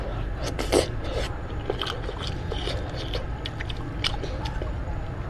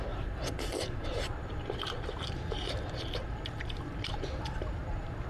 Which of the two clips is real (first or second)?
first